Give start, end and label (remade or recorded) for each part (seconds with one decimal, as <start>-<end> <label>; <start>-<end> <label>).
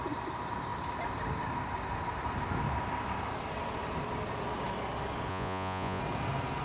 0.0-5.3 recorded; 5.3-6.0 remade; 6.0-6.6 recorded